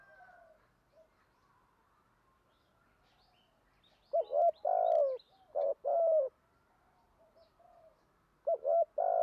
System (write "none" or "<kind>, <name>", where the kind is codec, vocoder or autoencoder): none